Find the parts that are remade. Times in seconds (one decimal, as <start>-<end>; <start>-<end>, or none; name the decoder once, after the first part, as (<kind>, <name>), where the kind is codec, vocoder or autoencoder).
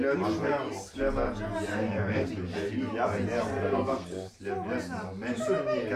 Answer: 1.7-2.3 (codec, SNAC); 3.5-4.3